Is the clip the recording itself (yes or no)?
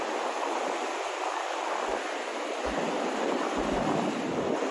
yes